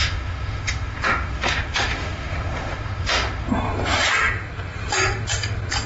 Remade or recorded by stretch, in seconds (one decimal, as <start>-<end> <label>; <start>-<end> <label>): 0.0-3.5 remade; 3.5-5.9 recorded